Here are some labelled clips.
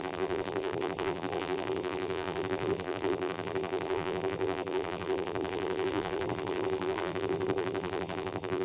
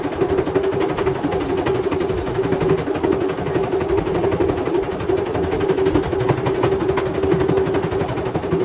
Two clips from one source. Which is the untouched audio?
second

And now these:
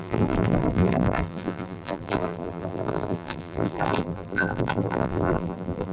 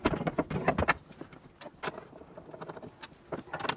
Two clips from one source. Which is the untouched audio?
second